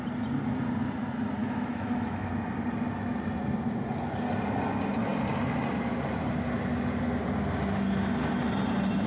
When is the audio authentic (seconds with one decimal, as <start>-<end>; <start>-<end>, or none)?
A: 0.0-1.4; 2.3-9.1